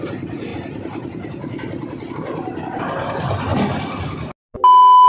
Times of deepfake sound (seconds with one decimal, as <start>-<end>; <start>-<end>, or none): 0.5-2.1; 3.5-4.0